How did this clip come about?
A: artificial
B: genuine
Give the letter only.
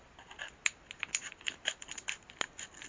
B